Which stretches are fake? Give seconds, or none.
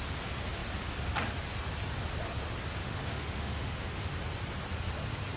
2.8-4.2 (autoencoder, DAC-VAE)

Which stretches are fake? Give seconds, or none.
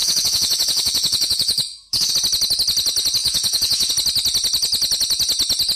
0.0-2.1 (autoencoder, DAC-VAE); 3.2-3.9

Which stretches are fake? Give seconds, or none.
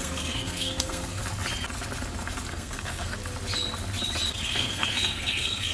0.0-1.2 (codec, SNAC); 2.5-3.2; 4.3-5.7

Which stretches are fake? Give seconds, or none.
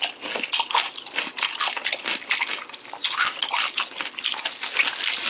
none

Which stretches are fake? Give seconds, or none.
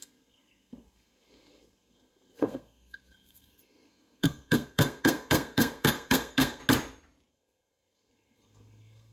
0.0-6.6 (codec, SNAC); 7.3-9.1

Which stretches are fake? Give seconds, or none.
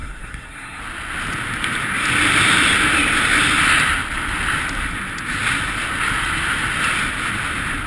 0.0-0.8 (codec, SNAC)